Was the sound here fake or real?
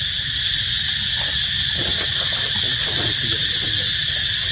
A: real